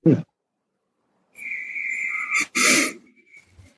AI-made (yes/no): yes